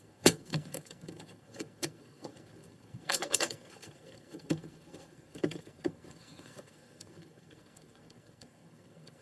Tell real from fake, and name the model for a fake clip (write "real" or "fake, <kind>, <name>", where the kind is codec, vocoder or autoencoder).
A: fake, codec, SNAC